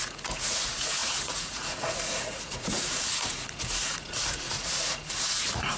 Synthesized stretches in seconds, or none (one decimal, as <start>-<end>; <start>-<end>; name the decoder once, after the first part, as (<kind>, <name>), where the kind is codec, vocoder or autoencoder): 0.0-5.8 (vocoder, Vocos)